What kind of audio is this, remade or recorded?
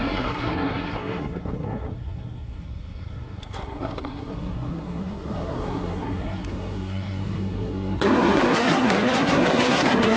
remade